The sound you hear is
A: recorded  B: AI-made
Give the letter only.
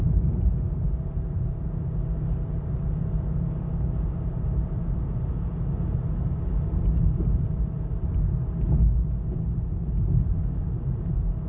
B